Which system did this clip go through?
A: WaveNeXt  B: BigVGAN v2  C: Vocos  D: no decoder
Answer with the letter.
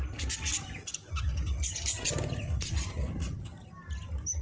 D